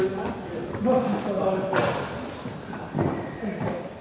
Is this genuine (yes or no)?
yes